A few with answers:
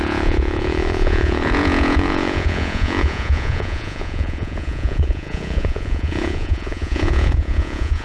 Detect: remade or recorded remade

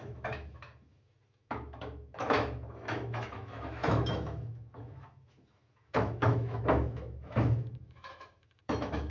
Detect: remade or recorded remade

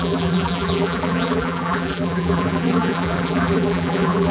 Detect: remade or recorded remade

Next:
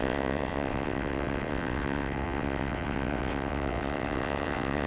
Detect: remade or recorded remade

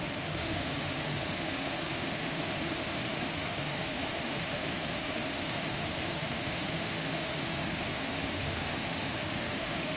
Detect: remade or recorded remade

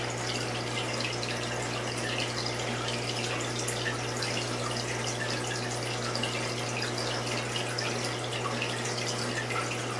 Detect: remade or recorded recorded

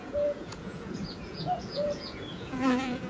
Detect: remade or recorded remade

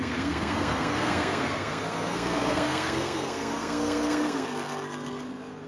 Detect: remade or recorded remade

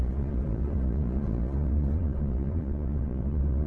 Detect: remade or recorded remade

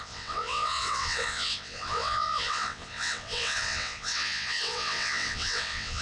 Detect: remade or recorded remade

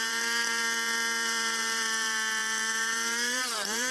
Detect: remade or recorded remade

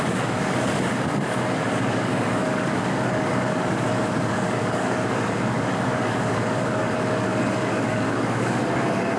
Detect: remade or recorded remade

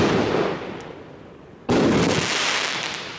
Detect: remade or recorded recorded